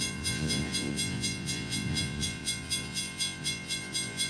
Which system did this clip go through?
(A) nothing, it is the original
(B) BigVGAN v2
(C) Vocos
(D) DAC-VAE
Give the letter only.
C